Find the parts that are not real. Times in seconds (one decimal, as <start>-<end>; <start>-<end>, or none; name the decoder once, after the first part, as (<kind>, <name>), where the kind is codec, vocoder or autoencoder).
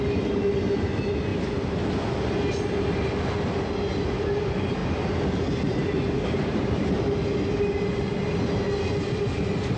none